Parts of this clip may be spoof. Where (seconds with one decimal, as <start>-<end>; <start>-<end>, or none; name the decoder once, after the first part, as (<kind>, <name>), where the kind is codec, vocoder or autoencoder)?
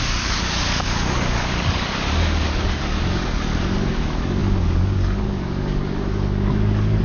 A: 0.0-7.0 (codec, DAC)